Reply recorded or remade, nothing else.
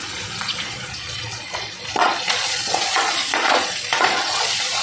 remade